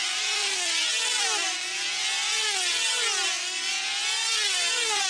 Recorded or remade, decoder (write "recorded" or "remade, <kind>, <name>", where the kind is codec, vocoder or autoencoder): recorded